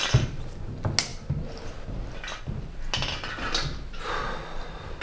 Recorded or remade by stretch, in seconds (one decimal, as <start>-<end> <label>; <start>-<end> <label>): 0.0-5.0 recorded